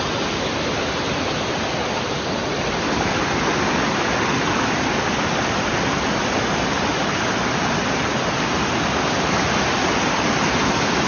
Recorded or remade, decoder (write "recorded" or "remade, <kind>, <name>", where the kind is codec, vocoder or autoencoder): recorded